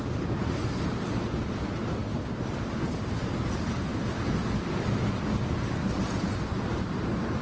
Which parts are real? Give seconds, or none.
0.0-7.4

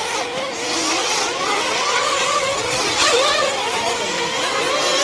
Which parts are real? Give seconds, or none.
0.0-1.0; 3.6-5.0

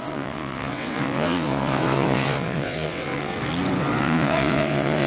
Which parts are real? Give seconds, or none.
3.3-4.0

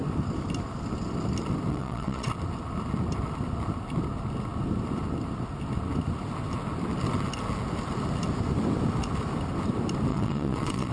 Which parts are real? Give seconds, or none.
0.0-1.7; 2.3-10.1

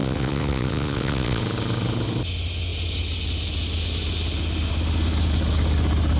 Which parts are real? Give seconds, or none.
1.4-6.2